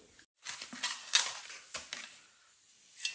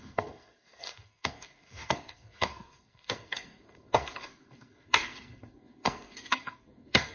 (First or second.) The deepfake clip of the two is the second